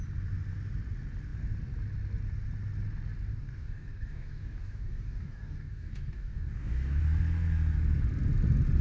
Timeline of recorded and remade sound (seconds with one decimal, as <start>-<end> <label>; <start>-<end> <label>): 0.0-3.3 recorded; 3.3-7.0 remade; 7.0-8.8 recorded